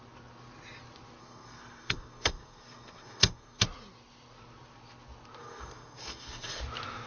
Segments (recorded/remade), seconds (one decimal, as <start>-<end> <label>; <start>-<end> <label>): 0.0-1.2 recorded; 1.2-3.6 remade; 3.6-5.4 recorded; 5.4-6.6 remade; 6.6-7.1 recorded